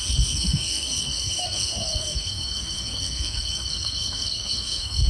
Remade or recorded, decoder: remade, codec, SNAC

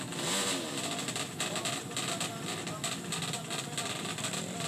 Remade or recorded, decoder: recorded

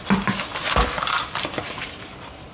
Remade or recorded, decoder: recorded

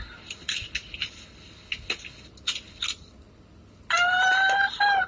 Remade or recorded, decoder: recorded